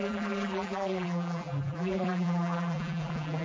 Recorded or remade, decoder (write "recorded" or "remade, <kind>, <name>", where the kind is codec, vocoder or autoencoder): remade, vocoder, BigVGAN v2